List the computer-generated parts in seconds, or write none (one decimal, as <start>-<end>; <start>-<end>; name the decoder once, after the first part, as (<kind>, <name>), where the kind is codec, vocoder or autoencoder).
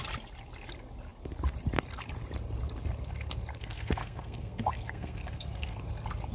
3.6-5.8 (codec, SNAC)